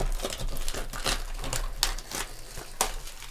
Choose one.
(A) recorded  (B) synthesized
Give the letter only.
A